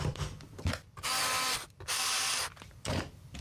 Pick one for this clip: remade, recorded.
remade